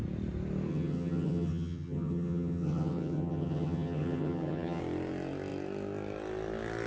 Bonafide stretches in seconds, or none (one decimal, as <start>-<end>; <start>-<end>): 0.0-0.7; 4.8-6.9